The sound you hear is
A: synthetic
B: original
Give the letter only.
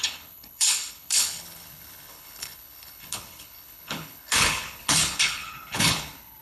A